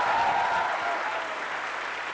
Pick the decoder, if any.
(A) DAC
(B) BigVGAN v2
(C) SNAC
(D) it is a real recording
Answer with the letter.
D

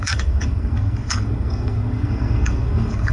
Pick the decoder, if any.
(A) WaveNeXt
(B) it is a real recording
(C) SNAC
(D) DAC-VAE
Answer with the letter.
C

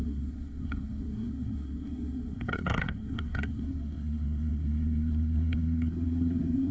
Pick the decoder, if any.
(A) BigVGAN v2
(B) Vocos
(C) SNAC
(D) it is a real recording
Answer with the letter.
C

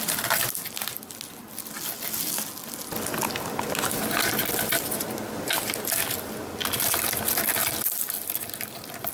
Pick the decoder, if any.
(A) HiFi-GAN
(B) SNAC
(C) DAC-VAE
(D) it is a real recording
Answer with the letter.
D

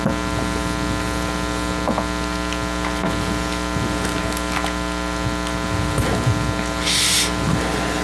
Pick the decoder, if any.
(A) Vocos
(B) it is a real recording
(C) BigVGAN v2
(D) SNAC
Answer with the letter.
B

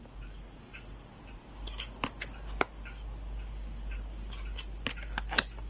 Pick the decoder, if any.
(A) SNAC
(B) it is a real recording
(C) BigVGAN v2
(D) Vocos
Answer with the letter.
B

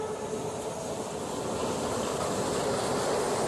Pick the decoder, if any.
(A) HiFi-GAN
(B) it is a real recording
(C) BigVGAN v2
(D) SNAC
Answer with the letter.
B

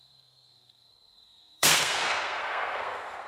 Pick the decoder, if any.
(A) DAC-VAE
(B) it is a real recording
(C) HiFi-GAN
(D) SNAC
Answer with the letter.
D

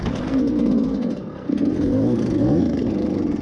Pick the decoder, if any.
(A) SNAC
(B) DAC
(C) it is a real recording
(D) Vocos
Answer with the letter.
A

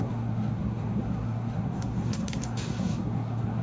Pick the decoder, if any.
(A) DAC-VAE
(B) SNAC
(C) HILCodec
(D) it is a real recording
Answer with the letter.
B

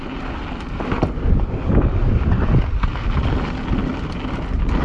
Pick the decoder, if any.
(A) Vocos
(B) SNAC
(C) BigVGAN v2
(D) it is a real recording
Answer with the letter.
D